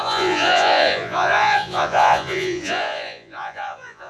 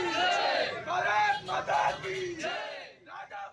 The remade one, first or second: first